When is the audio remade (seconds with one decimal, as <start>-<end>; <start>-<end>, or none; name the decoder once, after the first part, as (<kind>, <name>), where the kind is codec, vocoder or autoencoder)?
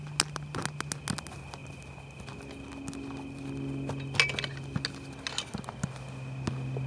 none